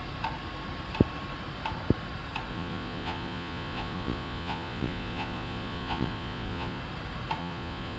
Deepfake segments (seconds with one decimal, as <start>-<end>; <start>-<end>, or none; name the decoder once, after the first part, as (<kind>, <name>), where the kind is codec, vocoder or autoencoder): 2.5-6.8 (vocoder, Vocos); 7.4-8.0